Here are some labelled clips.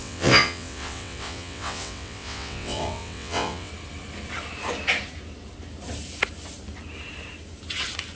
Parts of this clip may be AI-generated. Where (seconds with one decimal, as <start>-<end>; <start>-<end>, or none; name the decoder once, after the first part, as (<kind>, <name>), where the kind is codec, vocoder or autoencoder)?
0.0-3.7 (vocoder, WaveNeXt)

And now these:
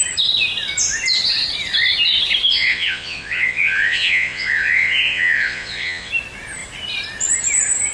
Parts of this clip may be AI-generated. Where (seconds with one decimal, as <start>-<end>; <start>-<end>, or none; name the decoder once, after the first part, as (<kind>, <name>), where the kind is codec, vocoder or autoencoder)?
2.5-6.1 (vocoder, Vocos)

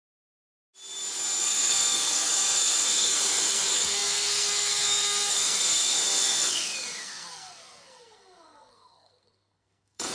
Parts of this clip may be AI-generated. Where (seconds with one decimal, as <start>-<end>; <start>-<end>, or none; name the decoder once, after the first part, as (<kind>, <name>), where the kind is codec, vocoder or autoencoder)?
1.4-10.1 (codec, SNAC)